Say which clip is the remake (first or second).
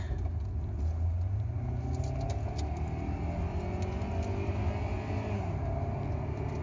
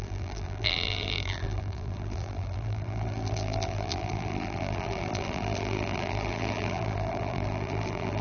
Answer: second